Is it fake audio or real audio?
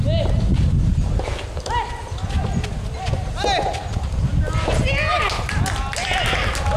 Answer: real